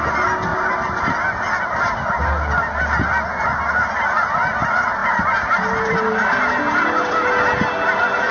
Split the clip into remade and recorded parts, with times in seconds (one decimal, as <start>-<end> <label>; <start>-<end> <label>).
0.0-0.5 recorded; 0.5-1.1 remade; 1.1-5.0 recorded; 5.0-7.3 remade; 7.3-8.3 recorded